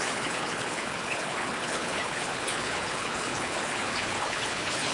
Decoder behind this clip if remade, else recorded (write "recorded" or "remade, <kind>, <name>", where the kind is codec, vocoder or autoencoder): remade, codec, HILCodec